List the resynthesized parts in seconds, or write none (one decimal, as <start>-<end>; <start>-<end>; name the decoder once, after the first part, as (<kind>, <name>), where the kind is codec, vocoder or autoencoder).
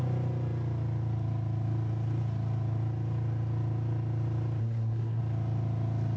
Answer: 4.6-5.2 (codec, SNAC)